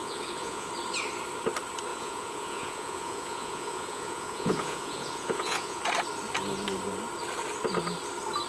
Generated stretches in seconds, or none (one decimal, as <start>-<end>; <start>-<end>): 0.0-0.7; 1.9-5.8